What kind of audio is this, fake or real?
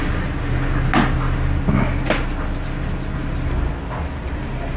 real